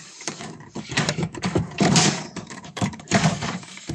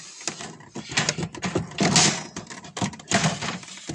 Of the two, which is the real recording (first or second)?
second